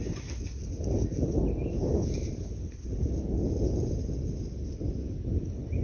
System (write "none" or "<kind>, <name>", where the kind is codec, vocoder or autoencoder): none